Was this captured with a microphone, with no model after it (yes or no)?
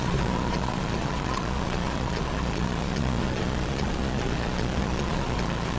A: no